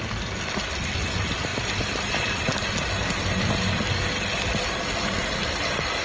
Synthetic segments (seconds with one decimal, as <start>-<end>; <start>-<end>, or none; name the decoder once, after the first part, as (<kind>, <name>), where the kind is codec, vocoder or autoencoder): none